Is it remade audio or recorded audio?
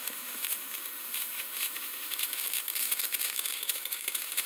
remade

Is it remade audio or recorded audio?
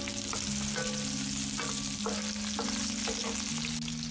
recorded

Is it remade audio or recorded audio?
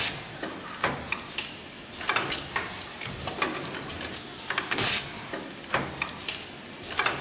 recorded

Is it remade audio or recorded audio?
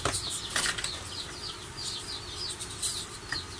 recorded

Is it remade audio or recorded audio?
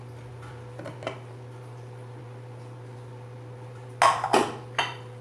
recorded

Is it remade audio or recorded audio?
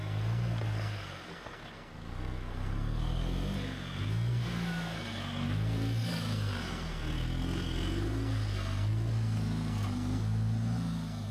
remade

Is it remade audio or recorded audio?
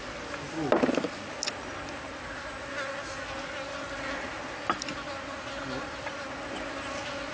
recorded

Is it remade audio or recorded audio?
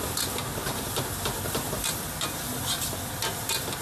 recorded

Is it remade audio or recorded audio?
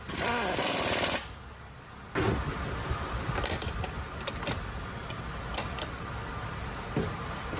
recorded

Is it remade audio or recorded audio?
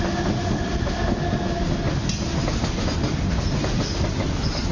recorded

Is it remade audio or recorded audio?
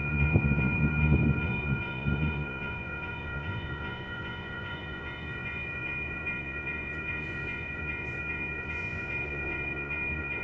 remade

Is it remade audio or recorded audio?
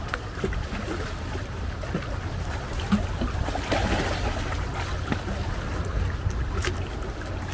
recorded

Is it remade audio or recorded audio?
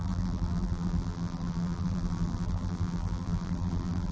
remade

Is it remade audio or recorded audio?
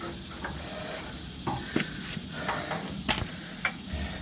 recorded